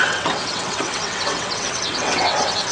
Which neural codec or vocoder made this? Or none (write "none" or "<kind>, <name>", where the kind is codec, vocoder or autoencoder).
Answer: vocoder, WaveNeXt